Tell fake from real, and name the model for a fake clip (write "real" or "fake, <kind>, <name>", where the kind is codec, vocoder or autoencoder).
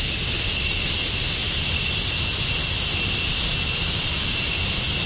real